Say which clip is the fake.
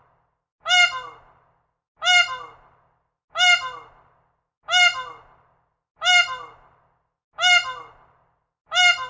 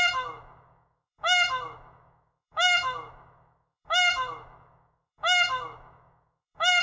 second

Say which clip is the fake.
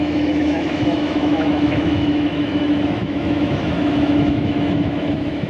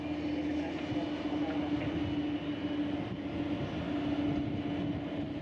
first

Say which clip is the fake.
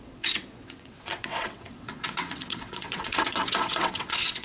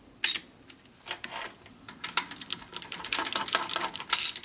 first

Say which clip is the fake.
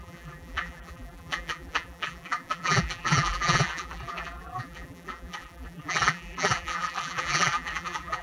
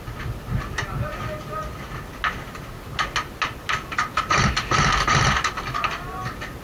first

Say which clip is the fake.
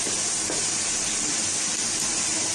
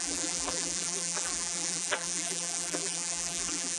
second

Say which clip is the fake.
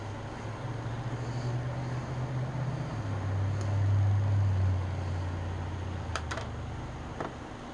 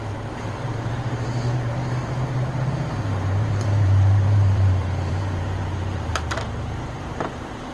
second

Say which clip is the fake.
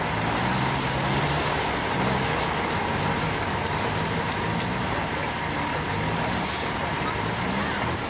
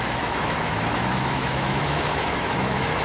second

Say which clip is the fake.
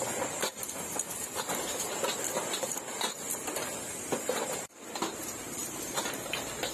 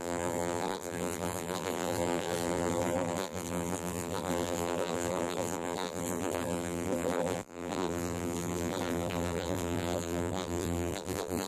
second